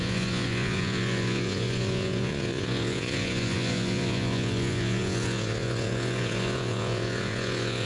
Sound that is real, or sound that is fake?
fake